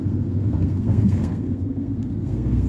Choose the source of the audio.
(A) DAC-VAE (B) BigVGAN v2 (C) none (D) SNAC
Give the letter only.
D